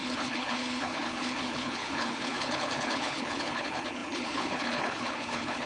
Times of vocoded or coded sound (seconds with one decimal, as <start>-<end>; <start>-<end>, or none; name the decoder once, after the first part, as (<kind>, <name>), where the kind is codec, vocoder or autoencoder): 0.0-5.7 (codec, HILCodec)